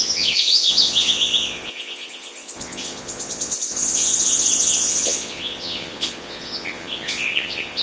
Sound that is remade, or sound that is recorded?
remade